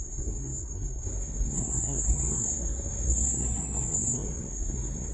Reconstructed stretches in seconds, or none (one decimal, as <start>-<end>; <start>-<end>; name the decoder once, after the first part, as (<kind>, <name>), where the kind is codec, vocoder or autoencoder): 0.0-5.1 (codec, SNAC)